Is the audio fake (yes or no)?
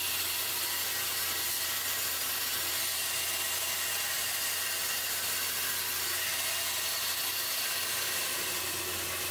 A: no